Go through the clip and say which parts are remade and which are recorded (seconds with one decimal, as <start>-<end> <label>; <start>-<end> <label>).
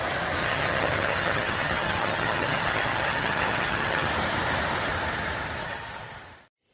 0.0-0.4 recorded; 0.4-4.1 remade; 4.1-5.6 recorded; 5.6-6.2 remade; 6.2-6.7 recorded